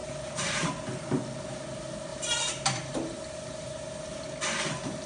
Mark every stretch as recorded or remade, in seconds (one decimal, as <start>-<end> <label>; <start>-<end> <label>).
0.0-0.7 remade; 0.7-2.1 recorded; 2.1-4.2 remade; 4.2-5.1 recorded